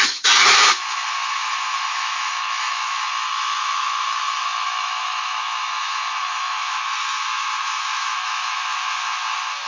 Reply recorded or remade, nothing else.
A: remade